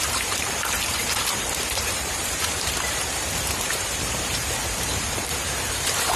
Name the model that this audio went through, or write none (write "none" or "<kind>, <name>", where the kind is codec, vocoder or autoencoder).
vocoder, BigVGAN v2